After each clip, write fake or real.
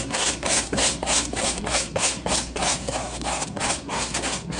fake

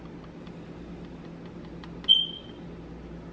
real